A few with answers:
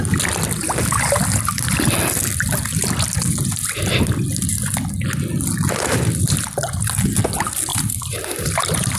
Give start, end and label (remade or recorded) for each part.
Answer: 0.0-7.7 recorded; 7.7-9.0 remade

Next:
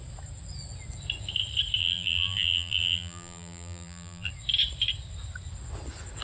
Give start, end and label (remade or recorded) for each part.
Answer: 0.0-1.8 recorded; 1.8-4.3 remade; 4.3-6.2 recorded

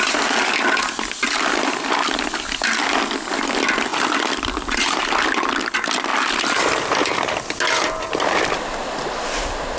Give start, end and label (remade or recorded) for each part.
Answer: 0.0-3.9 recorded; 3.9-5.5 remade; 5.5-6.1 recorded; 6.1-8.4 remade; 8.4-9.8 recorded

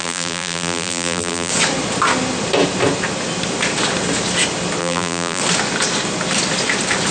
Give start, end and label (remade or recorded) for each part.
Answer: 0.0-1.5 remade; 1.5-4.8 recorded; 4.8-5.4 remade; 5.4-7.1 recorded